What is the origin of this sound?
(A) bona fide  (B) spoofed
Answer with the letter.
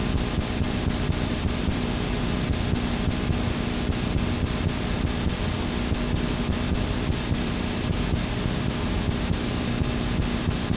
A